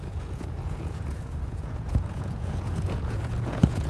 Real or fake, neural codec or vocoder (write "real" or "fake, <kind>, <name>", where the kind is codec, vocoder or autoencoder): fake, vocoder, Vocos